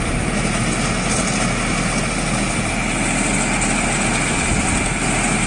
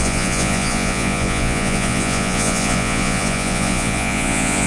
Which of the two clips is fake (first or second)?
second